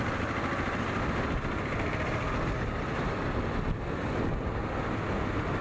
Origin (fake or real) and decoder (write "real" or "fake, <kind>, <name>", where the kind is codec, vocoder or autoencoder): real